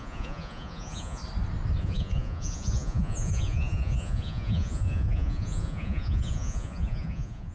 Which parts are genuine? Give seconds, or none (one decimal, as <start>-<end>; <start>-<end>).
1.2-1.8